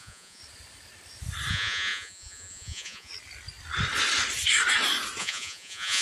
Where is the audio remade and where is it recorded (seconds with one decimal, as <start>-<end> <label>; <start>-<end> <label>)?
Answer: 0.0-0.4 remade; 0.4-1.5 recorded; 1.5-3.1 remade; 3.1-5.2 recorded; 5.2-6.0 remade